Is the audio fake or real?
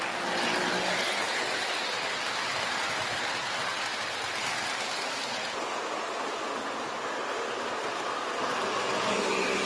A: real